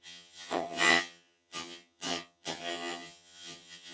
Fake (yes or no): yes